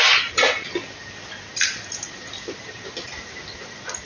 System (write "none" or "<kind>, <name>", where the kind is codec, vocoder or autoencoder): none